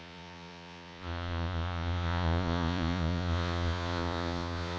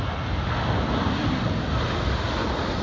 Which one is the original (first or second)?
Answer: second